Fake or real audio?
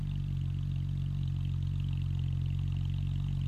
real